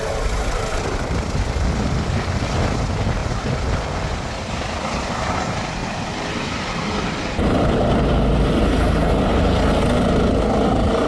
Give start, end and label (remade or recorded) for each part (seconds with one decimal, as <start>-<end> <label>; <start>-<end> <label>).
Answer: 0.0-5.8 recorded; 5.8-9.3 remade; 9.3-11.1 recorded